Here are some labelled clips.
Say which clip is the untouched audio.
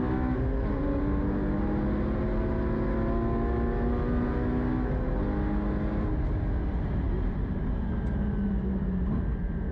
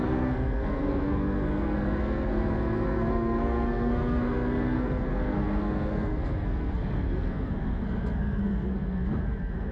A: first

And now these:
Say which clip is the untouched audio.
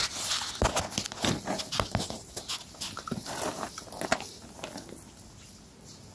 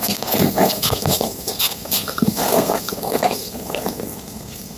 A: first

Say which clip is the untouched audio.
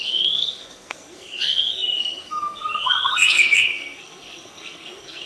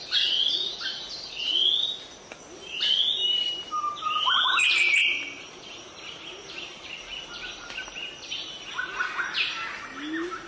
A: second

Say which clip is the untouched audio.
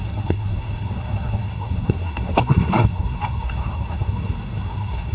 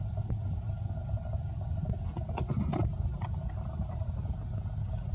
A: second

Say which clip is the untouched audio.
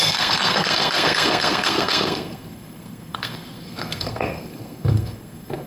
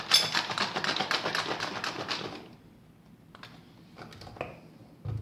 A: second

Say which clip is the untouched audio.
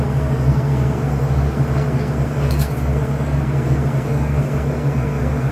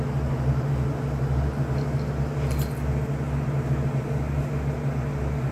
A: second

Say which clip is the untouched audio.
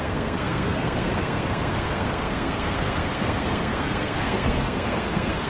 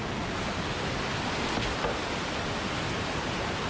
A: second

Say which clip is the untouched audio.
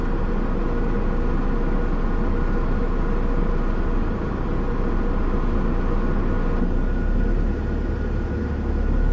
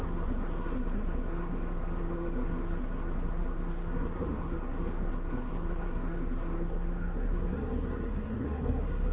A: first